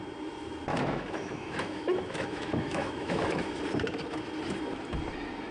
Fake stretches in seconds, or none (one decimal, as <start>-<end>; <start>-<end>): 0.7-3.6